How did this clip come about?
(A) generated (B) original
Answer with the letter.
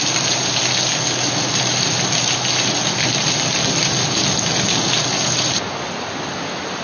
B